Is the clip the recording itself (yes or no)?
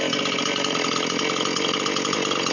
yes